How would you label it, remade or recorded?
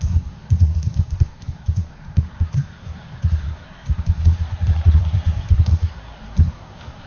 remade